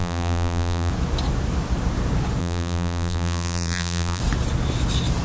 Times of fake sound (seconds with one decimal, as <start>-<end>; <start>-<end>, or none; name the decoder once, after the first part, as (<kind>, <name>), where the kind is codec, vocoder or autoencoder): 0.0-0.9 (vocoder, BigVGAN v2); 2.4-4.2